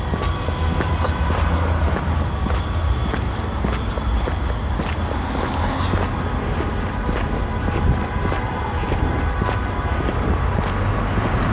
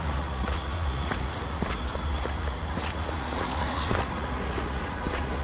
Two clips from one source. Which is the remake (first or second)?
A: second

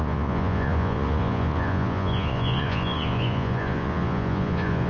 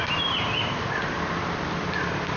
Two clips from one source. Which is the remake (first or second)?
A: first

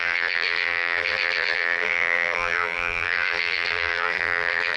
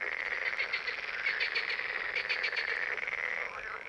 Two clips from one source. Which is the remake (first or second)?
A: first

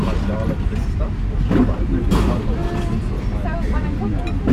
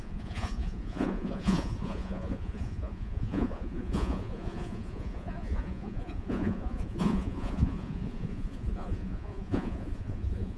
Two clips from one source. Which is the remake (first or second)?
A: second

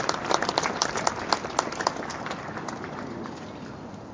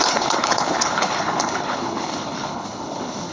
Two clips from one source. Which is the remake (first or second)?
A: second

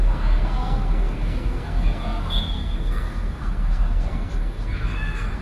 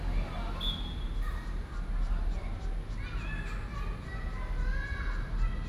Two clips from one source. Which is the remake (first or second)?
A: first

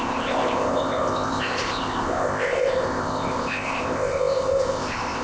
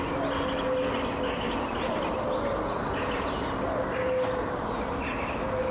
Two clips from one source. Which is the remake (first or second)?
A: first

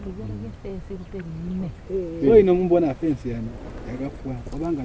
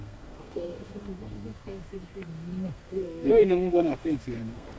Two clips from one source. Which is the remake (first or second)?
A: second